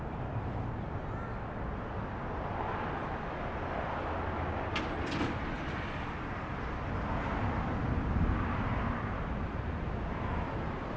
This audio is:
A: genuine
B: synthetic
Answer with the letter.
A